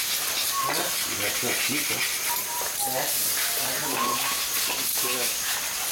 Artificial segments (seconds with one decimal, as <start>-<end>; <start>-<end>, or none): 3.8-4.4; 4.9-5.5